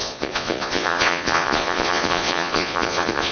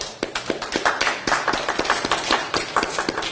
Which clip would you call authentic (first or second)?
second